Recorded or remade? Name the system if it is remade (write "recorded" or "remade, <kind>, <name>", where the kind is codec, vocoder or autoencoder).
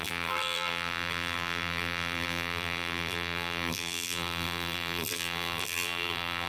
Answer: remade, vocoder, BigVGAN v2